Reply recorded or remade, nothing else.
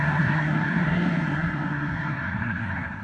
remade